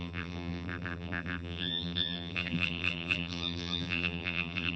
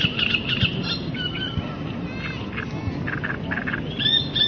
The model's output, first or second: first